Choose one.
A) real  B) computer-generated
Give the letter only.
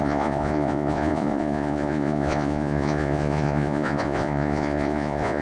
B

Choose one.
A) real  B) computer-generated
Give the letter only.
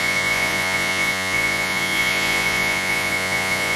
B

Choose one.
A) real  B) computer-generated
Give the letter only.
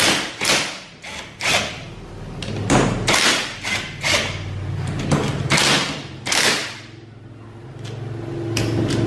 A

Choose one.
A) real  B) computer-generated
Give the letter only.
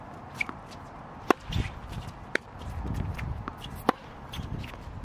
A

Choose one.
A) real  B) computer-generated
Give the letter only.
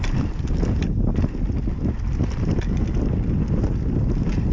A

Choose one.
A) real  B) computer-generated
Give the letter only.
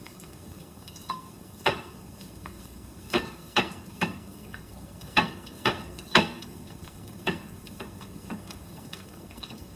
B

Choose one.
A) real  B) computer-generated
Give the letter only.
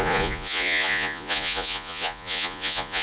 B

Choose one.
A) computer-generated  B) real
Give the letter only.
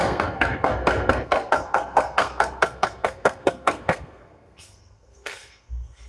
A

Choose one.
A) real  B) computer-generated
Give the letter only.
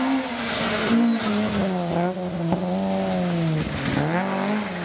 A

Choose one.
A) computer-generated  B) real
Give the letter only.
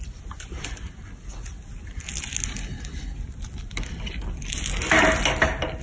B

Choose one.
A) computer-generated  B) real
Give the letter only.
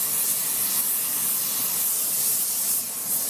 B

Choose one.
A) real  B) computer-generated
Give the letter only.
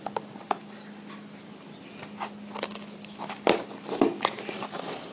A